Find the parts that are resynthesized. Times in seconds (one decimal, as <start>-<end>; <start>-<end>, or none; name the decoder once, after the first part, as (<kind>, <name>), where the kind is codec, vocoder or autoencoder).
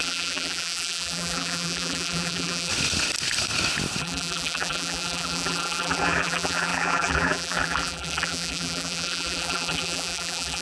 0.0-2.7 (vocoder, BigVGAN v2); 4.0-10.6